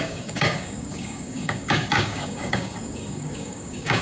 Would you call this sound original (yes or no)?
no